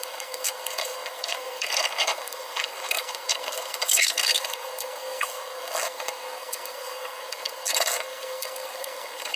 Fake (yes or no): yes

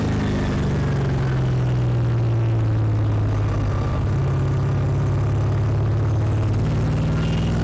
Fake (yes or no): no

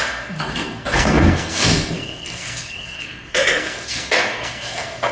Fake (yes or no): yes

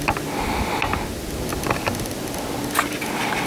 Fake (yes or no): no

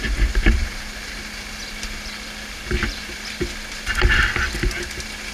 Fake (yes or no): no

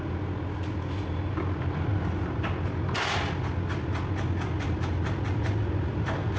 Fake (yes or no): no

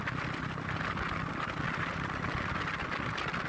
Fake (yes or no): no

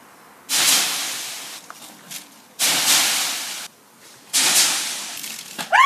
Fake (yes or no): no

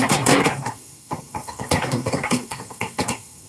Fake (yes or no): yes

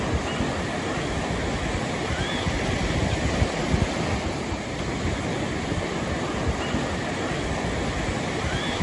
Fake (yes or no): no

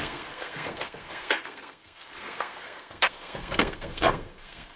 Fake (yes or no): yes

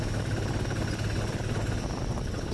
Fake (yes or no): no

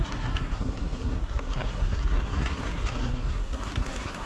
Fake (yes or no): yes